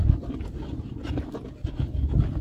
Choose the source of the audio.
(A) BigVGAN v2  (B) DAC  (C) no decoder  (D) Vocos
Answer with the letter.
C